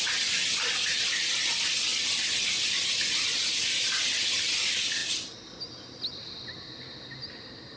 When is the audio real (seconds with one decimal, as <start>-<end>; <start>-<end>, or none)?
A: 0.0-7.8